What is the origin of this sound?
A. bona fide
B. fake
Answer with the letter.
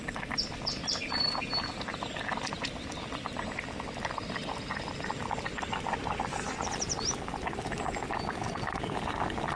A